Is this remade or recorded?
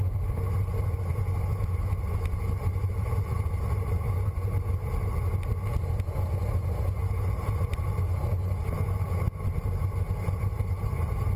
recorded